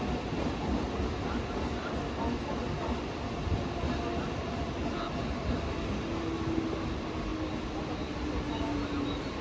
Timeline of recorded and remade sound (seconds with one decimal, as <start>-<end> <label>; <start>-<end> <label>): 0.0-9.4 recorded